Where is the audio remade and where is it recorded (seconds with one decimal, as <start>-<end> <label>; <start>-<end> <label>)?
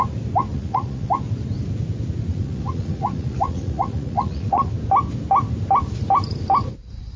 0.0-0.5 recorded; 0.5-1.1 remade; 1.1-2.3 recorded; 2.3-4.7 remade; 4.7-7.2 recorded